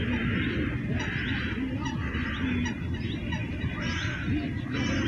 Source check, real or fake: real